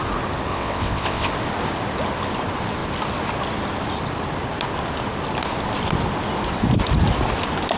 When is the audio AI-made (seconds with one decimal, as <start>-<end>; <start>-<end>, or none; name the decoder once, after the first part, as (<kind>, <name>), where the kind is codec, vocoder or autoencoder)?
0.5-1.3 (vocoder, WaveNeXt)